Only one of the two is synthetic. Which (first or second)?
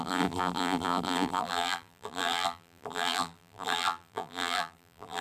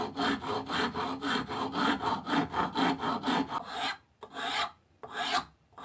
first